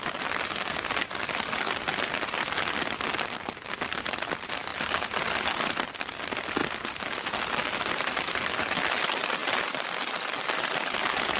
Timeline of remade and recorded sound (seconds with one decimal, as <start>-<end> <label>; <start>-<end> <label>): 0.0-11.4 recorded